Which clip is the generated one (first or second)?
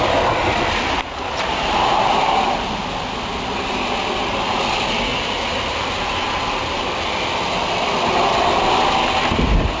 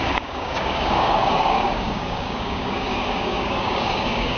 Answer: second